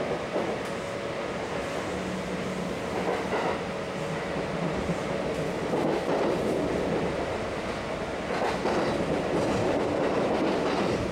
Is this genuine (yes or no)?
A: yes